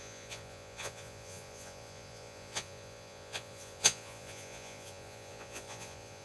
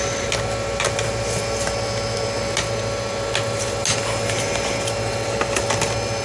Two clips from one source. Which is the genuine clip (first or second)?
second